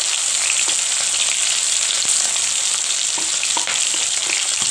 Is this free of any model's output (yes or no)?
yes